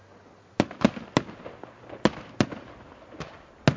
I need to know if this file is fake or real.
real